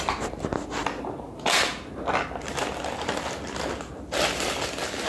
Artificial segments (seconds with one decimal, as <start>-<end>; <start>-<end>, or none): none